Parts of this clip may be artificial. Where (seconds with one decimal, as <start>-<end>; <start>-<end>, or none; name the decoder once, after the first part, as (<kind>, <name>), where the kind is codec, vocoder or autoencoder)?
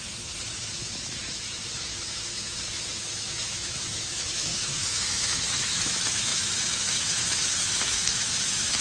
0.0-8.8 (autoencoder, DAC-VAE)